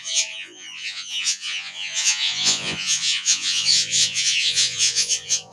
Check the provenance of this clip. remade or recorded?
remade